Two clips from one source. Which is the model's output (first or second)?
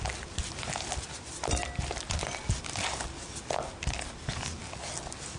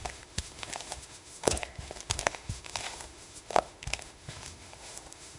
second